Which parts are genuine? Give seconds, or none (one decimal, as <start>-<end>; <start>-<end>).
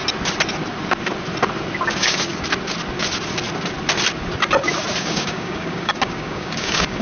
0.0-1.9; 2.3-5.0